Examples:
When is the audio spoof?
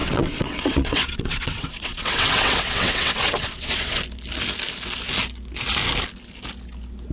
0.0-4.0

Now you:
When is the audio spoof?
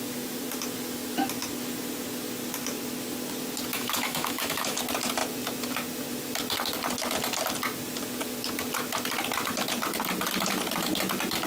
3.7-4.8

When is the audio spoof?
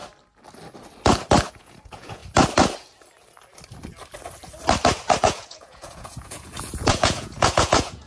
1.5-2.2; 5.2-8.1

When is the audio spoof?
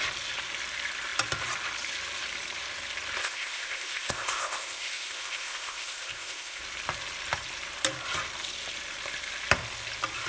3.2-6.6